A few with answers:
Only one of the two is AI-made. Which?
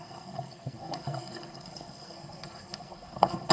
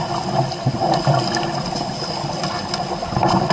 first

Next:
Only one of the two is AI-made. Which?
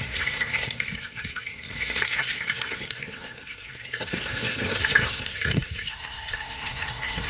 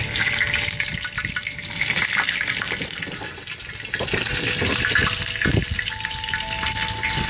first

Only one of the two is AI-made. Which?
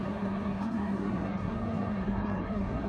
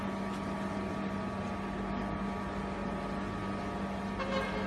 first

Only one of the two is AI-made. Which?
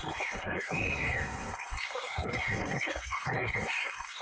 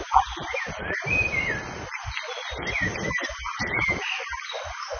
first